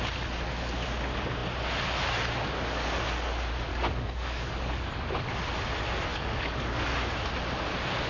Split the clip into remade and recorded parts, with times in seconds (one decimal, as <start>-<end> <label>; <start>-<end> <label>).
0.0-3.7 recorded; 3.7-4.9 remade; 4.9-6.1 recorded; 6.1-6.9 remade; 6.9-8.1 recorded